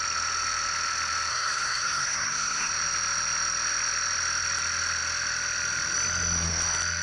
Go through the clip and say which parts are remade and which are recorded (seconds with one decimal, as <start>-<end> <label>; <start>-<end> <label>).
0.0-1.3 recorded; 1.3-2.7 remade; 2.7-7.0 recorded